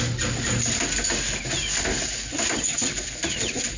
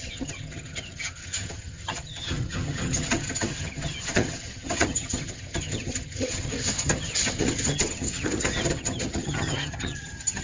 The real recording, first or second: first